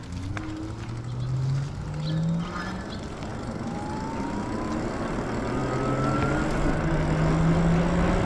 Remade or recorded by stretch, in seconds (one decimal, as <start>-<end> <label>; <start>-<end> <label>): 0.0-8.2 recorded